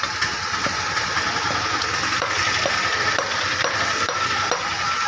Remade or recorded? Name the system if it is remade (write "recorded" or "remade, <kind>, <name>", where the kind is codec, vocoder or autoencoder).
recorded